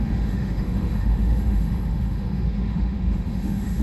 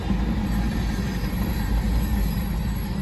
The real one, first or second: second